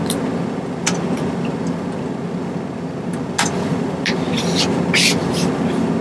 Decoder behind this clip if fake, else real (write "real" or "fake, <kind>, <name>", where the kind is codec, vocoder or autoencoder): real